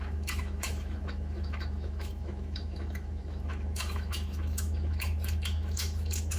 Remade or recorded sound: remade